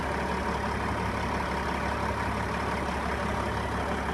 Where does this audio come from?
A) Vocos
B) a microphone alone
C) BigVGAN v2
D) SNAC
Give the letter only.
B